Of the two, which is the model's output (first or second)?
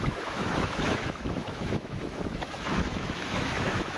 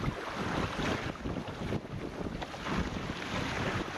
first